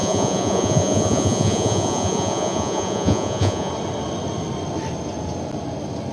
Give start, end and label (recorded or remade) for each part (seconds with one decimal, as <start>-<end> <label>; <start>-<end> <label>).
0.0-3.7 remade; 3.7-6.1 recorded